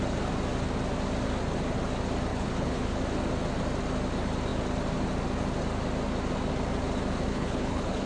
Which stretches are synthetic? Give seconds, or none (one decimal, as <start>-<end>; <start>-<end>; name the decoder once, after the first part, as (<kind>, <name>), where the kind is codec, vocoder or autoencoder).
2.3-3.0 (codec, HILCodec); 7.3-8.1